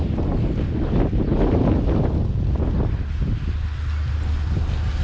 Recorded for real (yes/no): yes